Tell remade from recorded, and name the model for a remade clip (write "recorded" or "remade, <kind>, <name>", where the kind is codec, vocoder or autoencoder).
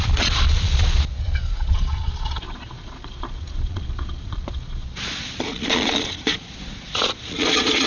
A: remade, vocoder, Vocos